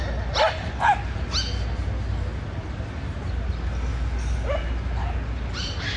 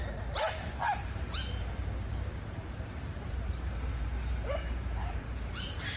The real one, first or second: first